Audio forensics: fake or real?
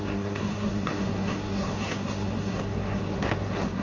fake